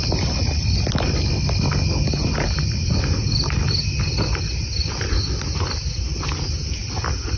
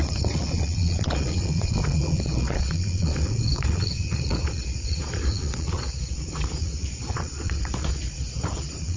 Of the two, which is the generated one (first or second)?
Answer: second